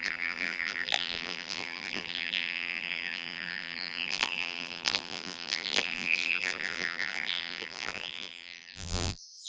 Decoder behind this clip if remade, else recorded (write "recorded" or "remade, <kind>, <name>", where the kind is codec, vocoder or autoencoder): remade, vocoder, BigVGAN v2